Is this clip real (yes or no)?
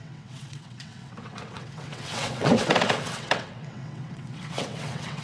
no